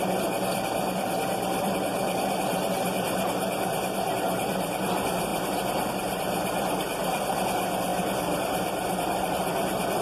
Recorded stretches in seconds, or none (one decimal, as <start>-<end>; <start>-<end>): 1.9-3.7